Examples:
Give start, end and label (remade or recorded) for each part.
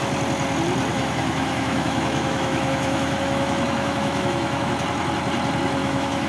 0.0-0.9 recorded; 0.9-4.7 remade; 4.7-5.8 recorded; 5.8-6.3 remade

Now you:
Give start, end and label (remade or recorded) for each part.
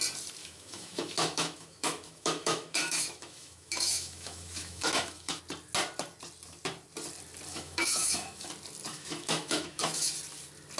0.0-0.4 recorded; 0.4-5.4 remade; 5.4-7.5 recorded; 7.5-8.5 remade; 8.5-8.9 recorded; 8.9-10.1 remade; 10.1-10.8 recorded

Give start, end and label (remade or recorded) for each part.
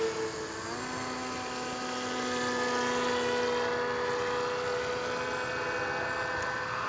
0.0-6.9 recorded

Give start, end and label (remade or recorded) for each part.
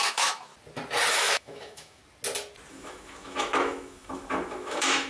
0.0-0.5 remade; 0.5-1.1 recorded; 1.1-2.0 remade; 2.0-2.7 recorded; 2.7-5.1 remade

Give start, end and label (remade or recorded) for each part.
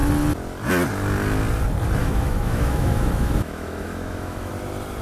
0.0-2.0 recorded; 2.0-4.5 remade; 4.5-5.0 recorded